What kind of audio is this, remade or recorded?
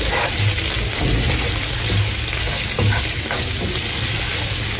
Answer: recorded